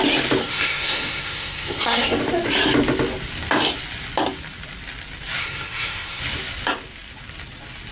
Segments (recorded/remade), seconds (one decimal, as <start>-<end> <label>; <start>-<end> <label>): 0.0-0.4 recorded; 0.4-2.2 remade; 2.2-5.4 recorded; 5.4-6.2 remade; 6.2-7.9 recorded